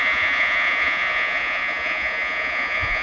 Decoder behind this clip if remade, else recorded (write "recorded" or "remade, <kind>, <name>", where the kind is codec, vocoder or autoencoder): remade, vocoder, Vocos